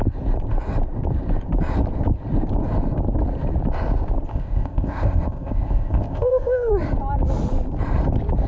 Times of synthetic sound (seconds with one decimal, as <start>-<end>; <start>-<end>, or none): 4.3-6.7